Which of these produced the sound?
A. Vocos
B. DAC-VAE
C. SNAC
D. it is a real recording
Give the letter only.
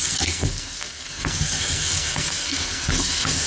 C